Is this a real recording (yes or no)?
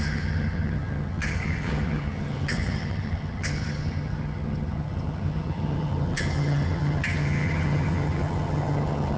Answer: no